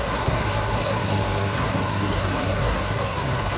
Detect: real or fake fake